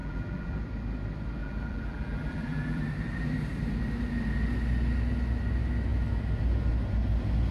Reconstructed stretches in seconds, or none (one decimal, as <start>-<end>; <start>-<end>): 0.0-0.6; 1.4-2.8